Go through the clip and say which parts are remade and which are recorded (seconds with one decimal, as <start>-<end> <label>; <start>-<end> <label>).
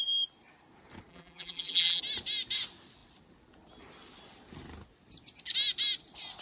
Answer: 0.0-1.1 recorded; 1.1-2.0 remade; 2.0-6.4 recorded